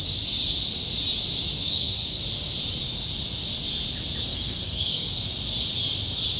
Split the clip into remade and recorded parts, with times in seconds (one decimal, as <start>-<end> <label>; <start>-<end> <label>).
0.0-1.7 recorded; 1.7-2.2 remade; 2.2-4.3 recorded; 4.3-5.3 remade; 5.3-6.4 recorded